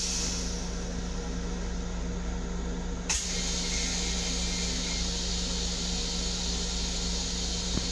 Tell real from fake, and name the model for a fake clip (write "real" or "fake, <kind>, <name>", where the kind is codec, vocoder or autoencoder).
real